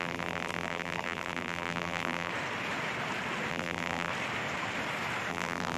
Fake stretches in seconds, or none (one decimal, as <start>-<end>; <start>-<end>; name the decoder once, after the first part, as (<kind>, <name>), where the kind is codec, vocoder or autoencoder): 0.0-2.3 (vocoder, BigVGAN v2); 3.5-4.1; 5.3-5.8